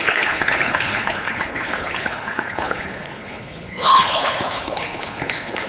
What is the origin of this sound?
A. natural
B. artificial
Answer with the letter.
B